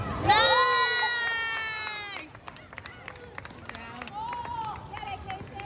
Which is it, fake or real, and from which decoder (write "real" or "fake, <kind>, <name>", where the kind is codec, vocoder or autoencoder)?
real